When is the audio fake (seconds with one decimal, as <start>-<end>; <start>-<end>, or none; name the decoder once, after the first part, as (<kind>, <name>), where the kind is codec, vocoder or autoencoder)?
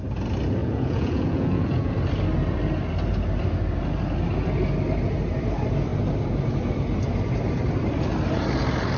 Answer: 0.6-1.9 (vocoder, Vocos)